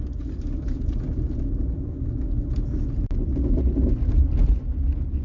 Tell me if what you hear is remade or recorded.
recorded